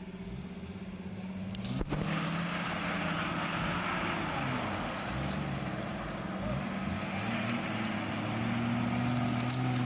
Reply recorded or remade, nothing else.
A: recorded